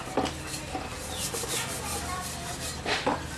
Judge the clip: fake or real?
real